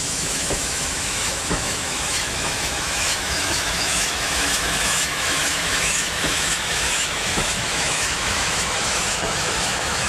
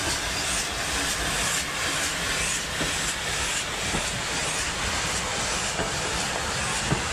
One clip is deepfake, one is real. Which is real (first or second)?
second